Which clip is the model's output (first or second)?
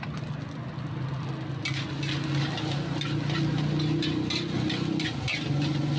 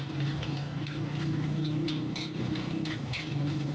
second